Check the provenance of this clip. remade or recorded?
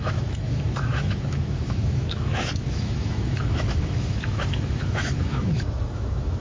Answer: remade